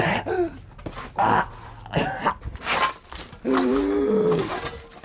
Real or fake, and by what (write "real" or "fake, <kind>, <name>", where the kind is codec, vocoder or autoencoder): real